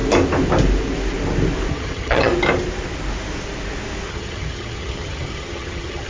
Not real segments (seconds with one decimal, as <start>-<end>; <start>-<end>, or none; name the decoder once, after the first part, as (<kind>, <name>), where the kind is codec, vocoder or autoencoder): 1.7-2.3 (vocoder, HiFi-GAN); 4.1-6.1